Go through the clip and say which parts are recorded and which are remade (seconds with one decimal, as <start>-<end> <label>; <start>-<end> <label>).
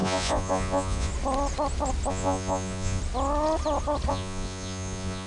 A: 0.0-1.1 remade; 1.1-2.1 recorded; 2.1-3.0 remade; 3.0-4.1 recorded; 4.1-5.3 remade